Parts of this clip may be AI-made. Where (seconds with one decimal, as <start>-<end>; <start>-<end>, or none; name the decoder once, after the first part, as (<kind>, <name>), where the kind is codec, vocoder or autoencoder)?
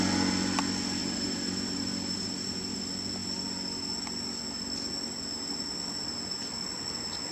1.0-2.8 (vocoder, BigVGAN v2)